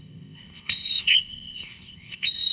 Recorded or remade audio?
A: remade